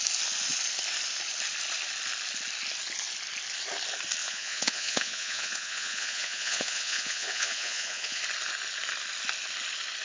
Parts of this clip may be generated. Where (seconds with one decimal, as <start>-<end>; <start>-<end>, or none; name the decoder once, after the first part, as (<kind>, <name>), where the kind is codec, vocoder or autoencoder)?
4.2-8.2 (vocoder, Vocos)